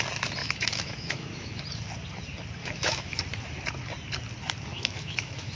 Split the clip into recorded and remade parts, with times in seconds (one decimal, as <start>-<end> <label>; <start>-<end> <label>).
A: 0.0-0.4 recorded; 0.4-1.6 remade; 1.6-2.6 recorded; 2.6-3.2 remade; 3.2-4.7 recorded; 4.7-5.6 remade